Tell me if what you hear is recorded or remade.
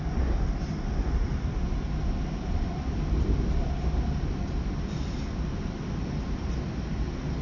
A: recorded